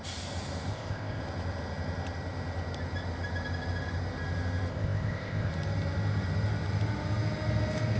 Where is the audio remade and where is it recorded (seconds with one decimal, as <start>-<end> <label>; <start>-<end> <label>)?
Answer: 0.0-0.7 recorded; 0.7-1.2 remade; 1.2-4.7 recorded; 4.7-5.5 remade; 5.5-8.0 recorded